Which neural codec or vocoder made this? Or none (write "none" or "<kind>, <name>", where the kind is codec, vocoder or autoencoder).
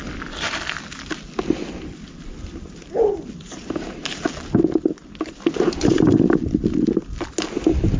none